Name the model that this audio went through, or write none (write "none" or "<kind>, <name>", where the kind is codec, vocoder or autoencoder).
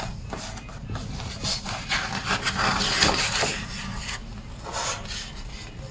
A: none